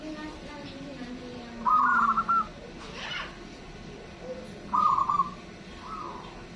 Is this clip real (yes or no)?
yes